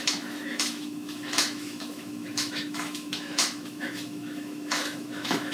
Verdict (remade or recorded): remade